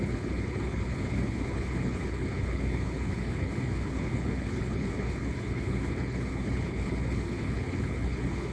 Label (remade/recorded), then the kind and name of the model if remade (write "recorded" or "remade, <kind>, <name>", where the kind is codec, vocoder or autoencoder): remade, codec, HILCodec